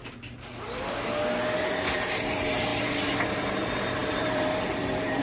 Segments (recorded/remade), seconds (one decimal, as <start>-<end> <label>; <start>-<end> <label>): 0.0-1.6 recorded; 1.6-2.7 remade; 2.7-3.4 recorded; 3.4-5.2 remade